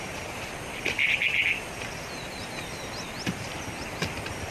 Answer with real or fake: real